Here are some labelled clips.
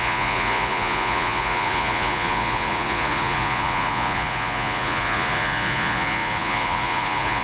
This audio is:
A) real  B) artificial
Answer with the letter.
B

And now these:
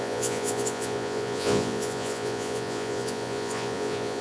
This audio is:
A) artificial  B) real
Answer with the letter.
A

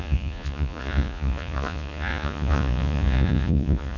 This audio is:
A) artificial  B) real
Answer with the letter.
A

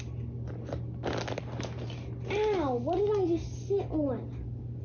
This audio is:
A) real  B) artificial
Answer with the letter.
A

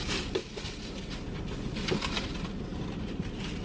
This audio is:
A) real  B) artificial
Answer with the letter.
A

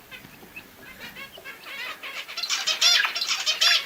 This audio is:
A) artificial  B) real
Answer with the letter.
B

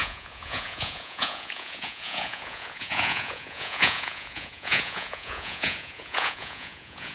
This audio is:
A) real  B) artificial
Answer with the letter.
B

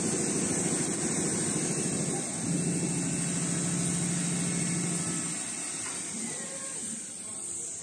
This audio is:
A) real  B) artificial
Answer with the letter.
A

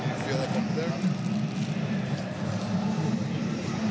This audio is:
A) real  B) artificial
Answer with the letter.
A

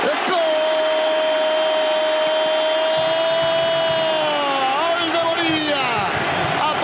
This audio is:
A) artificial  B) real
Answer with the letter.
B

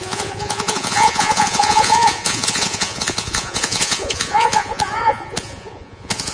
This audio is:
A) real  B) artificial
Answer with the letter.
B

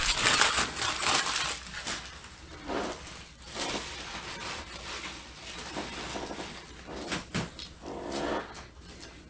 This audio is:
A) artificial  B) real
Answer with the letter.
B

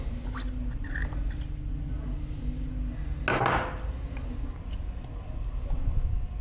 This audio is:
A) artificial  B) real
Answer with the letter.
B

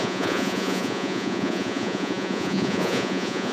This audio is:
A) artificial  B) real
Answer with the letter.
A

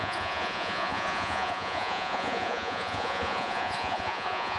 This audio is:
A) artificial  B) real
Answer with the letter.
A